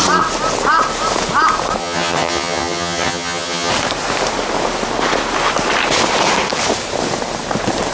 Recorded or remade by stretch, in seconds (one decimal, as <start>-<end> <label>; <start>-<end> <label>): 0.0-1.8 recorded; 1.8-3.7 remade; 3.7-7.9 recorded